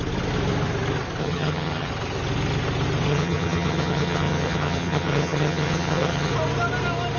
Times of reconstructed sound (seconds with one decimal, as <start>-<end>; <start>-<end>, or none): 1.2-1.9; 3.1-6.3